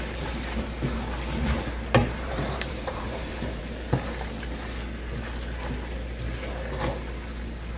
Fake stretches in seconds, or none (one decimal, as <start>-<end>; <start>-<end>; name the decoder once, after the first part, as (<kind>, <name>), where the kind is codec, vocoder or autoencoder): 2.0-3.6 (vocoder, BigVGAN v2)